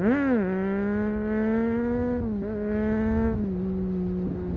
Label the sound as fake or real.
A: real